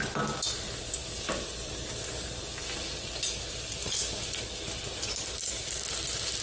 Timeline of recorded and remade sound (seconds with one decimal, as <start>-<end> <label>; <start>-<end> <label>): 0.0-6.4 recorded